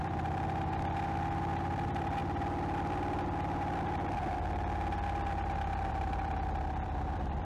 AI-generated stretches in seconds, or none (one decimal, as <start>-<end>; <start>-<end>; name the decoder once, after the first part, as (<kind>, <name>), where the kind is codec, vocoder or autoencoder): 0.0-2.2 (vocoder, BigVGAN v2); 5.9-7.4